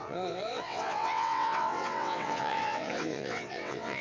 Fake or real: fake